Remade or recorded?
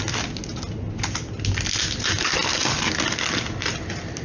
recorded